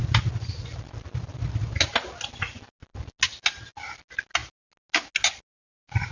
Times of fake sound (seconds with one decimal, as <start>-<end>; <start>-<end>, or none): none